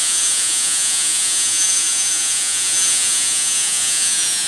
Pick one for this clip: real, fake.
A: fake